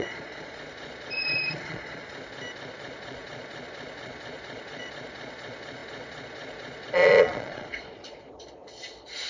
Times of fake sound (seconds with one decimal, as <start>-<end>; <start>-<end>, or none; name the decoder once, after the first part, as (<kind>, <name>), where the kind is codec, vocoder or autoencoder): 0.0-2.0 (vocoder, Vocos); 2.8-9.3